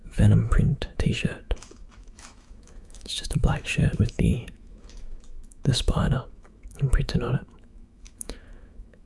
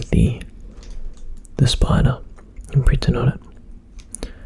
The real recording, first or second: second